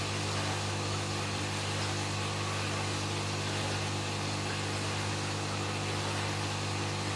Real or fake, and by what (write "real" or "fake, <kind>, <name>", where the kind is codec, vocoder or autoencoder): real